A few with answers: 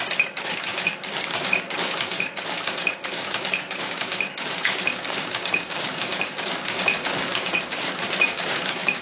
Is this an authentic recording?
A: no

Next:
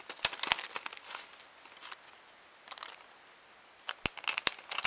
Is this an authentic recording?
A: yes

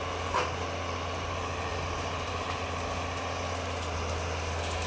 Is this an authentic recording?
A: yes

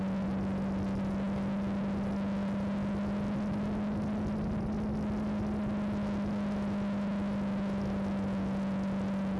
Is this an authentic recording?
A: yes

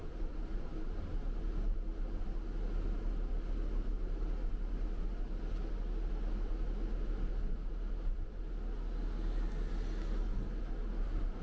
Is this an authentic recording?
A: yes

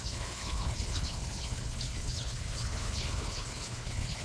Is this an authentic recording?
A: no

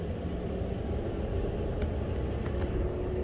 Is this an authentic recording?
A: yes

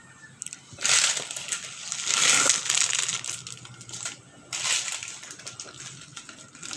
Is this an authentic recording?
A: yes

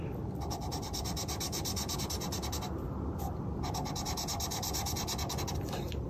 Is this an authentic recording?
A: yes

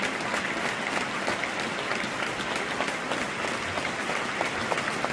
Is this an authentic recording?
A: yes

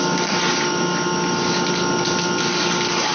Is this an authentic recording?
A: yes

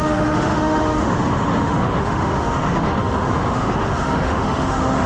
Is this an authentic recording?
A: no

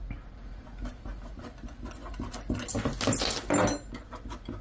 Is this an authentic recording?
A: yes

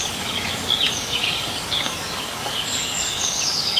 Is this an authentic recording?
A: no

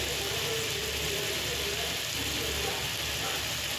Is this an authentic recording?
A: yes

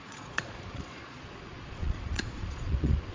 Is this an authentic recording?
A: no